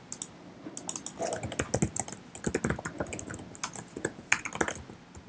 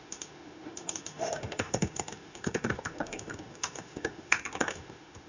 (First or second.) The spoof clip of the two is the second